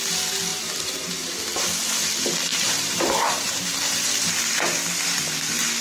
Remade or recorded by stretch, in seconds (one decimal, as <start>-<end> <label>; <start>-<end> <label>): 0.0-0.5 recorded; 0.5-1.3 remade; 1.3-2.5 recorded; 2.5-4.6 remade; 4.6-5.8 recorded